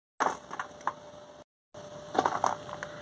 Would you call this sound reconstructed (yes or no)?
no